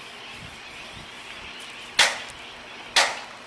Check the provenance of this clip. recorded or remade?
recorded